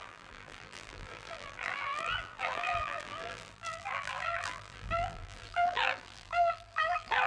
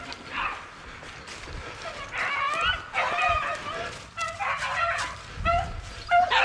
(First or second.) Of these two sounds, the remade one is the first